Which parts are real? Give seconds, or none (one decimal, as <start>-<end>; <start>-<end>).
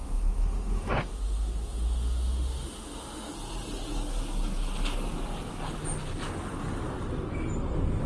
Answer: 3.3-8.1